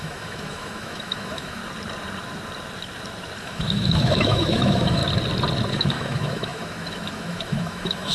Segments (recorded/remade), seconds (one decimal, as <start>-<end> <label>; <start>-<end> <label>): 0.0-1.6 remade; 1.6-3.4 recorded; 3.4-5.0 remade; 5.0-5.7 recorded; 5.7-8.1 remade